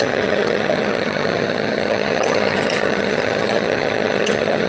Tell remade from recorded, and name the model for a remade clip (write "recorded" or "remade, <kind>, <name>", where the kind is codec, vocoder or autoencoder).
remade, vocoder, HiFi-GAN